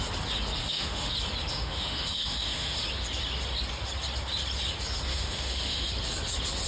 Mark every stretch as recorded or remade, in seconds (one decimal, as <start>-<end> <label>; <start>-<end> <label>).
0.0-0.6 recorded; 0.6-1.1 remade; 1.1-1.5 recorded; 1.5-2.8 remade; 2.8-5.1 recorded; 5.1-5.9 remade; 5.9-6.7 recorded